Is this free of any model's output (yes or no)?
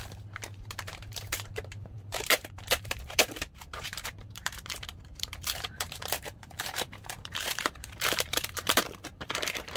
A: no